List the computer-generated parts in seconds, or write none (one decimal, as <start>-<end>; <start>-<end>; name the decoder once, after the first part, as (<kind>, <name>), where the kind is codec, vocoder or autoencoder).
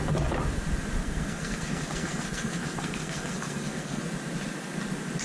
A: 1.0-4.0 (codec, SNAC)